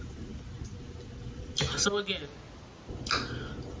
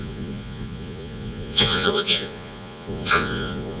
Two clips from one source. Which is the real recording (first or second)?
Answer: first